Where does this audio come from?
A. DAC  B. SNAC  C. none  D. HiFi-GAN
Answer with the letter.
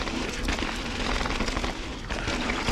C